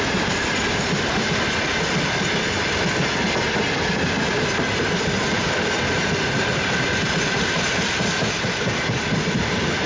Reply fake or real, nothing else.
real